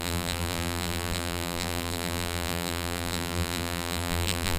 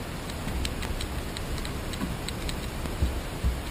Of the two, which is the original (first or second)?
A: second